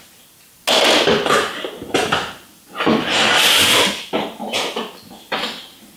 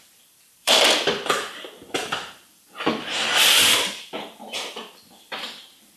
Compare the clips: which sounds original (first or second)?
first